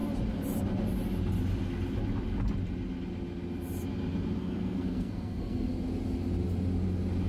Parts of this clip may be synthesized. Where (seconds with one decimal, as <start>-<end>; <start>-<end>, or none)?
4.4-5.7

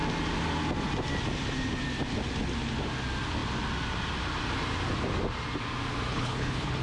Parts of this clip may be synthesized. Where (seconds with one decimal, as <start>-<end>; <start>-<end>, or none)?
6.1-6.8

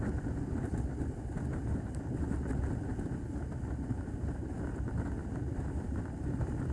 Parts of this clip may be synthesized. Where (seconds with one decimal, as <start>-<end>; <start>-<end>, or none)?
1.5-2.0

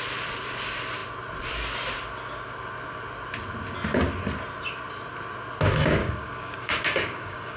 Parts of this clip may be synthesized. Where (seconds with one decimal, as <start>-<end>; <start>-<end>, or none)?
6.0-7.6

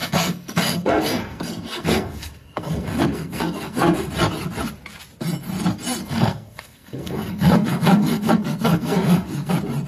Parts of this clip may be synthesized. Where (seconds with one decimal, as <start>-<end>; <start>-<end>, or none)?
0.0-4.1; 6.0-9.5

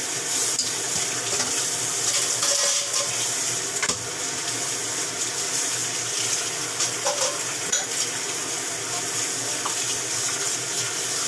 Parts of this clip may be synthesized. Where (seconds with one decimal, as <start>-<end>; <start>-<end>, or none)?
none

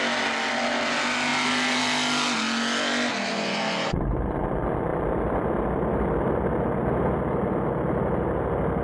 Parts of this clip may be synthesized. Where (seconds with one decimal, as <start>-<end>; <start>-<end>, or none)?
3.3-4.0

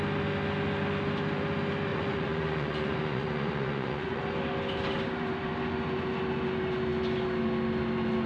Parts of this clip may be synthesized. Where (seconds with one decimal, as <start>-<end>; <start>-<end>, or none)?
1.9-4.2